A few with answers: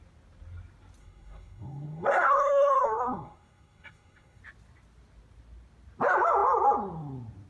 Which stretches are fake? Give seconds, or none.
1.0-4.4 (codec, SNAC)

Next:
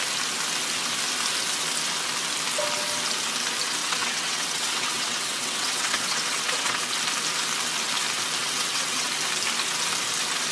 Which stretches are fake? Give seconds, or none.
3.8-6.8 (vocoder, WaveNeXt); 8.4-9.1